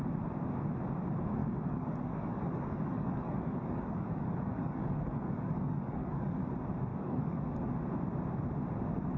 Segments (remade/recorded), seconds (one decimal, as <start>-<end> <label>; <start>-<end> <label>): 0.0-1.4 recorded; 1.4-6.5 remade; 6.5-6.9 recorded; 6.9-7.7 remade; 7.7-9.2 recorded

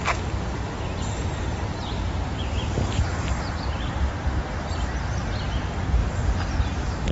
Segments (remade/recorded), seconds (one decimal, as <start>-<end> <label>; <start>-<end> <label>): 0.0-6.0 remade; 6.0-6.6 recorded; 6.6-7.1 remade